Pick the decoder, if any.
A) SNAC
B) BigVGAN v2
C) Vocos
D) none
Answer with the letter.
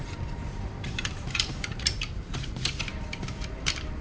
B